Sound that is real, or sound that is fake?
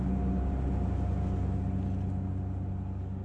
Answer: real